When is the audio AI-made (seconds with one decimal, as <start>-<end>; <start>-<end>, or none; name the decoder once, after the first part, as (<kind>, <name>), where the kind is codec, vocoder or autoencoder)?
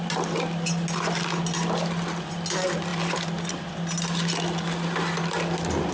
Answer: none